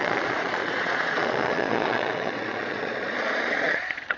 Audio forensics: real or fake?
fake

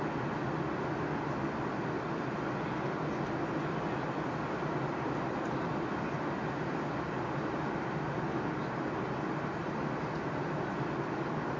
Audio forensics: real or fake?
real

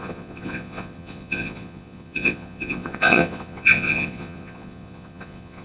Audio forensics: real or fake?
fake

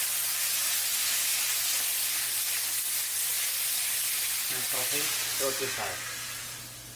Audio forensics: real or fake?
real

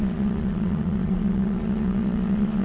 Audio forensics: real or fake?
fake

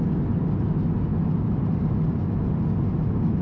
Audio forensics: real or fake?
real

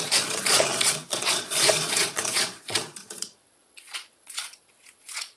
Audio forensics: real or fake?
fake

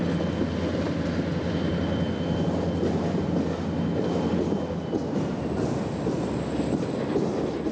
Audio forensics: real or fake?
real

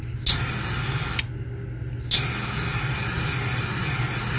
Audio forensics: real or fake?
real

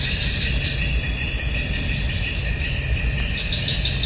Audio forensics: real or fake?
real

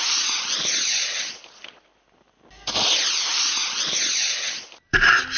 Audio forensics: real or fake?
real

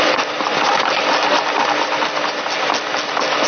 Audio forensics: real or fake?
real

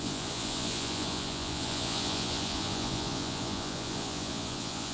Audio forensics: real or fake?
fake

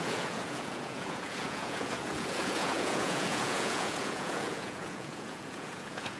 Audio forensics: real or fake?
fake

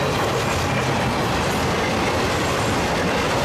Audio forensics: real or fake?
real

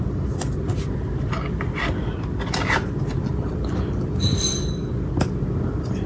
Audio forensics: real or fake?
real